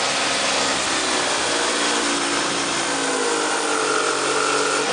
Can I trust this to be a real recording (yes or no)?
yes